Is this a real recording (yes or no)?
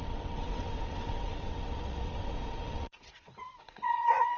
no